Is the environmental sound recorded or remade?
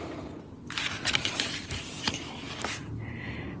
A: recorded